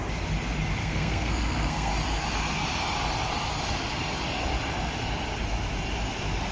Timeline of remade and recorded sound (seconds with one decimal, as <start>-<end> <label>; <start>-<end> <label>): 0.0-0.8 recorded; 0.8-1.9 remade; 1.9-6.5 recorded